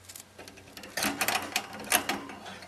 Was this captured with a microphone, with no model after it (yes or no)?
yes